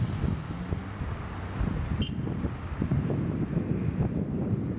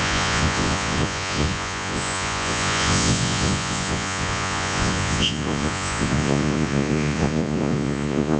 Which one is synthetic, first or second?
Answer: second